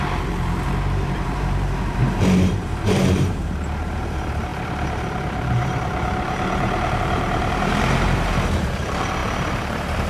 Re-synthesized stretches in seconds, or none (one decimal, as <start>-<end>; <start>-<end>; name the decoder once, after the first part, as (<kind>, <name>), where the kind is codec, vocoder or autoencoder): 0.0-10.1 (vocoder, BigVGAN v2)